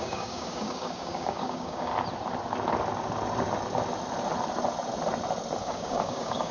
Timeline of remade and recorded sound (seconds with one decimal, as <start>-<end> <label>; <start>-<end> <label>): 0.0-1.9 remade; 1.9-5.6 recorded; 5.6-6.5 remade